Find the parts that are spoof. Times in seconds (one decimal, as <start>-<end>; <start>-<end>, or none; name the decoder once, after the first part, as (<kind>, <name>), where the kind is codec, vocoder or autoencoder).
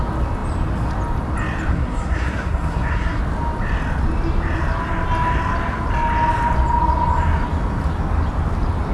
1.7-3.2 (codec, SNAC)